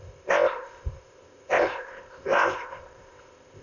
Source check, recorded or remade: remade